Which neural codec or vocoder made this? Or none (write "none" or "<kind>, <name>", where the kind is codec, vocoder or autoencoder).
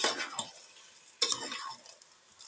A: none